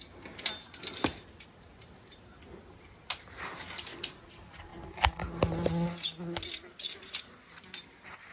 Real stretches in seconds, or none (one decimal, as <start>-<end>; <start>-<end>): 0.0-8.3